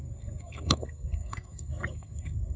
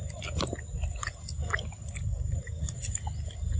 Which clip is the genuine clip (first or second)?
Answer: second